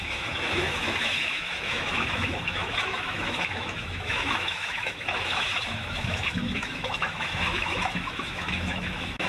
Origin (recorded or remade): remade